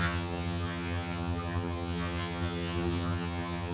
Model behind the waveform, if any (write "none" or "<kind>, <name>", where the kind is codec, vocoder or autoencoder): vocoder, HiFi-GAN